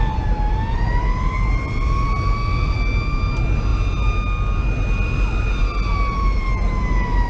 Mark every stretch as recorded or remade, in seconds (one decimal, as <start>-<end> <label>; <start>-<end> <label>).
0.0-7.3 recorded